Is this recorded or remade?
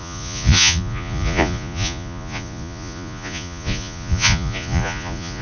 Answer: remade